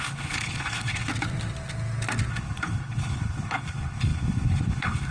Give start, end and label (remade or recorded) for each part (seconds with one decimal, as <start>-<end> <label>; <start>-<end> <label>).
0.0-1.1 remade; 1.1-2.3 recorded; 2.3-5.1 remade

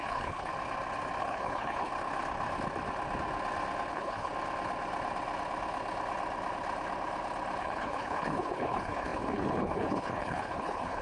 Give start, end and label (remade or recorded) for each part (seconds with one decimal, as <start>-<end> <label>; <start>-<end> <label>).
0.0-0.5 remade; 0.5-1.2 recorded; 1.2-1.9 remade; 1.9-3.9 recorded; 3.9-4.3 remade; 4.3-7.6 recorded; 7.6-11.0 remade

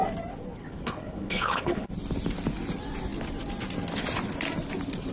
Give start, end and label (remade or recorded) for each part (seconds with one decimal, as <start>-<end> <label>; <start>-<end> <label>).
0.0-0.6 recorded; 0.6-1.9 remade; 1.9-5.1 recorded

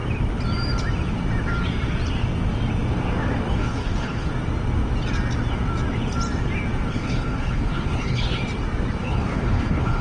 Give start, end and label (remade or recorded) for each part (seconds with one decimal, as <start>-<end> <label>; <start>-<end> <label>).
0.0-3.5 recorded; 3.5-4.3 remade; 4.3-6.9 recorded; 6.9-8.4 remade; 8.4-9.0 recorded; 9.0-10.0 remade

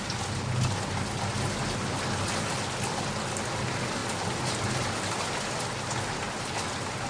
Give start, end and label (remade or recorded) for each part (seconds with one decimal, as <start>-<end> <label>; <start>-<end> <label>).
0.0-7.1 recorded